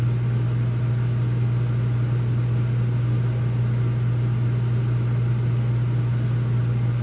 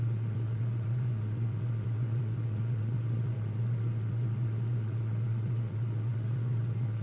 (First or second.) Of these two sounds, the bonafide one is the first